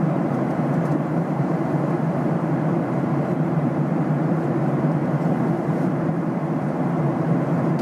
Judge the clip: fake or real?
fake